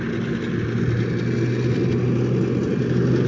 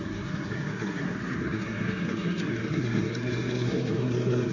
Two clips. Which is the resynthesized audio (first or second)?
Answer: second